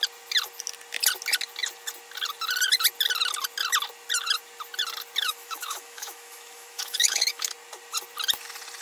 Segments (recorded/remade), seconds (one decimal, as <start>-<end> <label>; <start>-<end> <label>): 0.0-5.2 recorded; 5.2-7.5 remade; 7.5-8.8 recorded